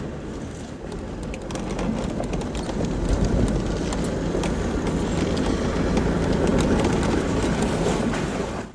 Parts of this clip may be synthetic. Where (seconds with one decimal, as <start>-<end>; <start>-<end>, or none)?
none